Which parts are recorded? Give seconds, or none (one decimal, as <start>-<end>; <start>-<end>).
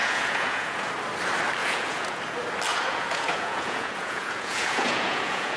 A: 0.9-1.6; 2.2-2.7